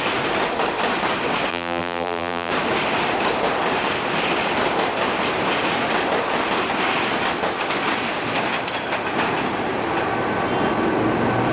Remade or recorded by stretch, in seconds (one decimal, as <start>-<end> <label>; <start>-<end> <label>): 0.0-1.5 recorded; 1.5-2.5 remade; 2.5-11.5 recorded